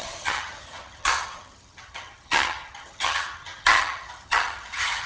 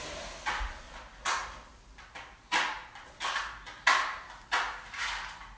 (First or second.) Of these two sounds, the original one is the second